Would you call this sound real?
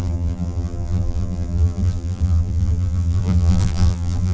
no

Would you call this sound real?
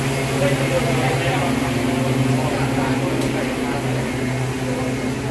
yes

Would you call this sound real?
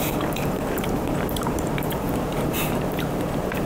no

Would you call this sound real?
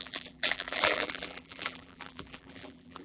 no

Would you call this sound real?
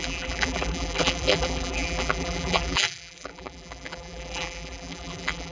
no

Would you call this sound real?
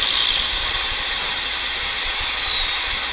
no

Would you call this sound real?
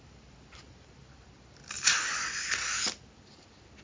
yes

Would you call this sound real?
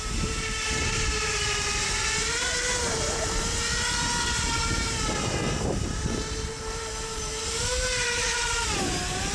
no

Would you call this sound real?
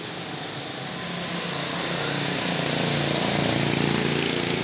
yes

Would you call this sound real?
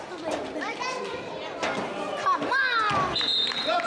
no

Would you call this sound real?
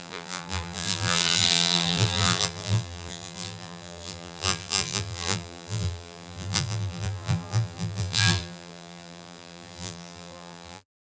no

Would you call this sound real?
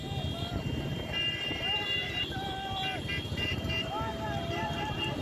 no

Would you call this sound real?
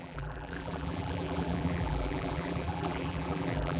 no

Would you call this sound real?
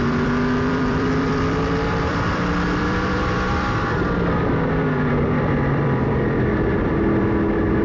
no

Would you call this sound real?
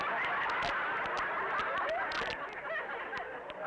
yes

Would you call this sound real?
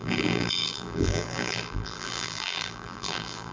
no